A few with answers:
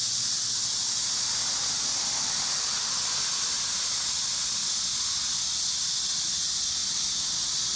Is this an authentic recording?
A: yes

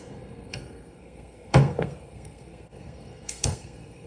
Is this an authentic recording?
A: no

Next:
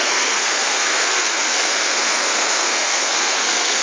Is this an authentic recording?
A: no